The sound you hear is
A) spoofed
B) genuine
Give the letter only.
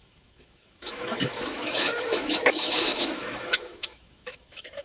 A